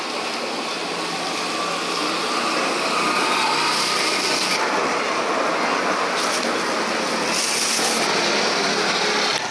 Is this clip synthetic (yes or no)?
no